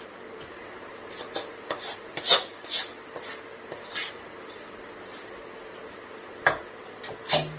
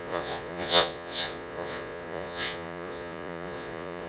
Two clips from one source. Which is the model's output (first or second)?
second